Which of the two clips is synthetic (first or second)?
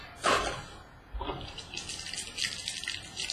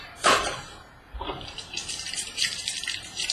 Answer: second